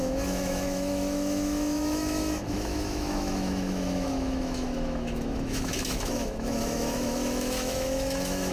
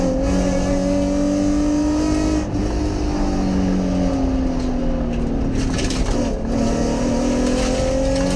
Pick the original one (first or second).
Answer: second